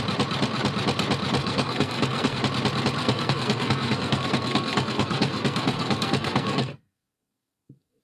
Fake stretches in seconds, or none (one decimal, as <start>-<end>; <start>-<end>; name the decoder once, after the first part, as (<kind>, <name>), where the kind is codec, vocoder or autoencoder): 1.4-2.4 (codec, SNAC); 3.0-8.0